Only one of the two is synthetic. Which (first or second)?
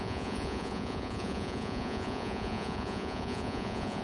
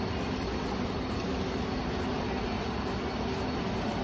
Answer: first